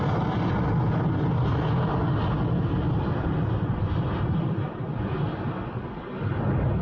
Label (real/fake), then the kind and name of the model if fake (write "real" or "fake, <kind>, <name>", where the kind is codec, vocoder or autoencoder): real